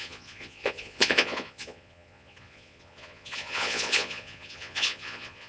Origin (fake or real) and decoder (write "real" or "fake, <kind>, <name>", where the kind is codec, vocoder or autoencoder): fake, vocoder, Vocos